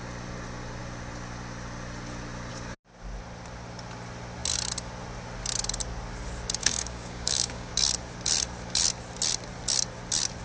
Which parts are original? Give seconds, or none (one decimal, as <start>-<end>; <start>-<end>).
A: 0.0-6.6; 7.7-10.4